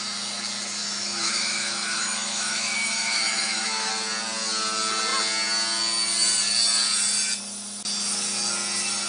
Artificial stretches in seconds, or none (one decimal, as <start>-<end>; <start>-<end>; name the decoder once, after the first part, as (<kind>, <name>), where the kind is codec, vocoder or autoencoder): 0.8-3.9 (autoencoder, DAC-VAE)